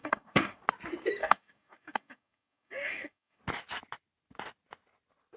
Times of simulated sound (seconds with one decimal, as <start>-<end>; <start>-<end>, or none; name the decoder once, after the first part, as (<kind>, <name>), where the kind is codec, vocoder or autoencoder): 0.0-0.6 (codec, DAC); 1.2-3.4